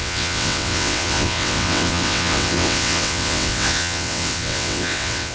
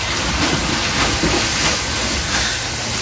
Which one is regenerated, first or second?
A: first